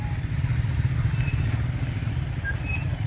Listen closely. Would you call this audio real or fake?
real